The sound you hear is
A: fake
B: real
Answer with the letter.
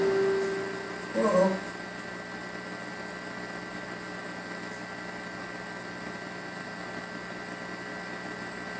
B